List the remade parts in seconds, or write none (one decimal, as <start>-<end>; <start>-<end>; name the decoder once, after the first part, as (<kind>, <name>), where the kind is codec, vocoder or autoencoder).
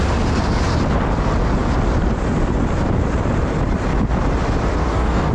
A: 4.8-5.3 (codec, DAC)